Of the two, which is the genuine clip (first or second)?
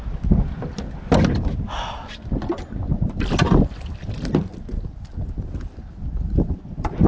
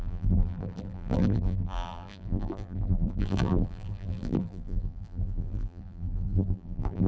first